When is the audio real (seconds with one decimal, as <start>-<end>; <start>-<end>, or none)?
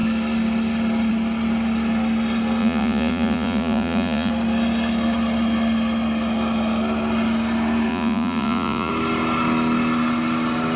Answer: 0.0-2.6; 4.3-7.9; 8.9-10.8